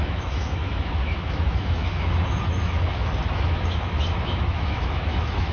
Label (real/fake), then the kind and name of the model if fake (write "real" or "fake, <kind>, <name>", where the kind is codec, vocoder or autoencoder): fake, autoencoder, DAC-VAE